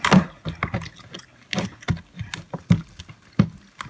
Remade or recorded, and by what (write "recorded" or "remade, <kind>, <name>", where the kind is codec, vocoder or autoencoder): recorded